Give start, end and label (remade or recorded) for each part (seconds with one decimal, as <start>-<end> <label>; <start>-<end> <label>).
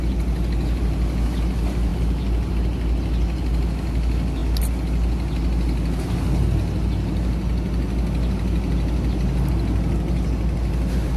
0.0-11.2 recorded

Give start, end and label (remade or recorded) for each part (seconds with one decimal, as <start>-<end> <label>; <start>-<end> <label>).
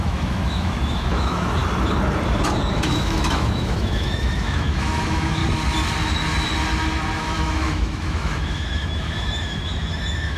0.0-1.6 remade; 1.6-2.7 recorded; 2.7-5.4 remade; 5.4-7.2 recorded; 7.2-10.4 remade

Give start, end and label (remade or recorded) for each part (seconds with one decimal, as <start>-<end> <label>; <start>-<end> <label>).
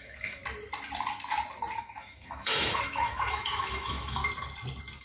0.0-0.4 remade; 0.4-1.8 recorded; 1.8-4.2 remade; 4.2-5.0 recorded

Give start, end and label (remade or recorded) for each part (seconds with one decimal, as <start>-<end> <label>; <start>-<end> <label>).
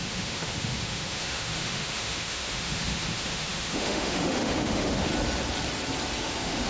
0.0-5.1 remade; 5.1-6.2 recorded; 6.2-6.7 remade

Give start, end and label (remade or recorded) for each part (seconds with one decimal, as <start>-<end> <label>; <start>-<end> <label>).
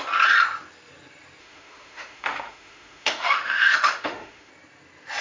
0.0-1.4 recorded; 1.4-4.5 remade; 4.5-5.2 recorded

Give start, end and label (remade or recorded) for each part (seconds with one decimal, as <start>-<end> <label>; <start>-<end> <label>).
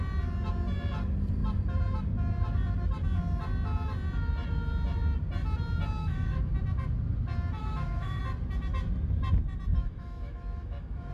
0.0-6.0 recorded; 6.0-6.5 remade; 6.5-7.6 recorded; 7.6-8.2 remade; 8.2-9.7 recorded; 9.7-11.1 remade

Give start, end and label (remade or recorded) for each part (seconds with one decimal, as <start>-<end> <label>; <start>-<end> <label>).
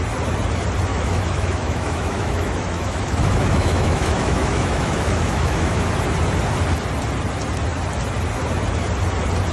0.0-0.9 recorded; 0.9-5.9 remade; 5.9-9.5 recorded